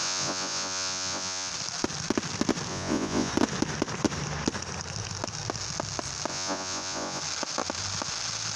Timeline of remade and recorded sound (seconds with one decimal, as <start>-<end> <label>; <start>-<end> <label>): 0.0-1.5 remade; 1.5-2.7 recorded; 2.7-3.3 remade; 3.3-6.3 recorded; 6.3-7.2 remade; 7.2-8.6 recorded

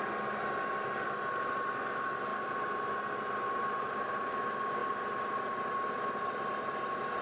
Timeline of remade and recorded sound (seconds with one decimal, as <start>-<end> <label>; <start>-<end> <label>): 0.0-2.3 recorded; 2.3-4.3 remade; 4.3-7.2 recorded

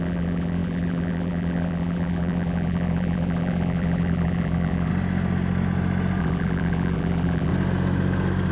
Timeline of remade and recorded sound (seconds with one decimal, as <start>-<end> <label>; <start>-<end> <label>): 0.0-4.9 remade; 4.9-6.2 recorded; 6.2-7.5 remade; 7.5-8.5 recorded

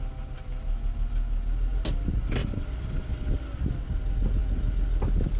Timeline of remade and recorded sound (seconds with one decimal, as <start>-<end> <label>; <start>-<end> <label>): 0.0-2.4 recorded; 2.4-3.4 remade; 3.4-5.4 recorded

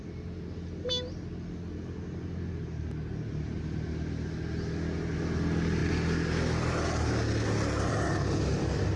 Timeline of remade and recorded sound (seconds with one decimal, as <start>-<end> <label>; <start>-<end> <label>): 0.0-9.0 recorded